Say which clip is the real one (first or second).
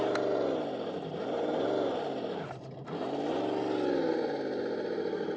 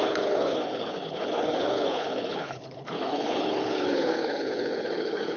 first